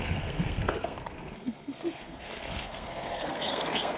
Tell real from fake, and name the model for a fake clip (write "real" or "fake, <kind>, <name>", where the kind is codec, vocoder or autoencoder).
fake, codec, SNAC